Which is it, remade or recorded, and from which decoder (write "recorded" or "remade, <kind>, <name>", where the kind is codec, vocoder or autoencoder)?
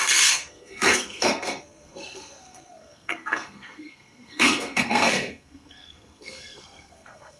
remade, codec, SNAC